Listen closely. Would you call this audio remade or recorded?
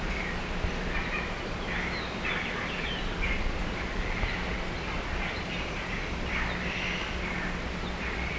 recorded